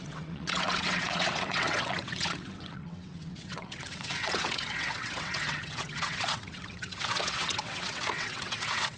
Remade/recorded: remade